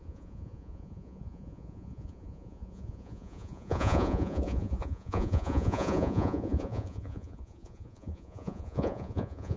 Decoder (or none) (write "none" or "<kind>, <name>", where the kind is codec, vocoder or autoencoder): vocoder, Vocos